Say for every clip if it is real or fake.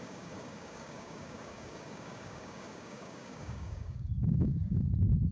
fake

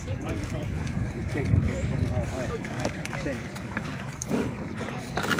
fake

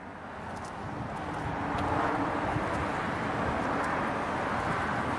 real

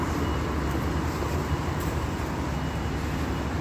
real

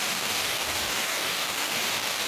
fake